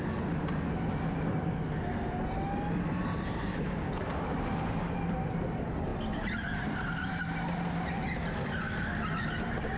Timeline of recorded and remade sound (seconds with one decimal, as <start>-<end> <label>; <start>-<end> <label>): 0.0-9.8 recorded